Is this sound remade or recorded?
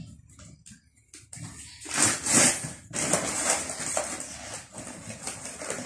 recorded